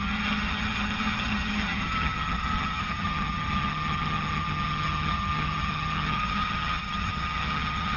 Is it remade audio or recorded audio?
remade